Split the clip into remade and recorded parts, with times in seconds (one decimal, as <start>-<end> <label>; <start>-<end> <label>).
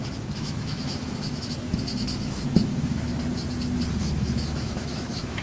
0.0-3.1 remade; 3.1-4.0 recorded; 4.0-5.4 remade